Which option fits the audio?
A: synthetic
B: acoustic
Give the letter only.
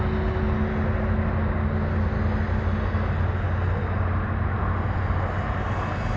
B